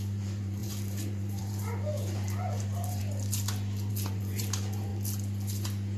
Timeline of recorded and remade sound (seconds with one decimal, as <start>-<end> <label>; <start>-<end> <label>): 0.0-3.0 remade; 3.0-3.9 recorded; 3.9-4.9 remade; 4.9-6.0 recorded